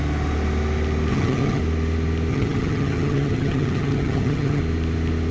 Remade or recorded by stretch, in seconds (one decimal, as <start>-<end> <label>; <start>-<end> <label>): 0.0-1.1 recorded; 1.1-1.6 remade; 1.6-2.3 recorded; 2.3-4.6 remade; 4.6-5.3 recorded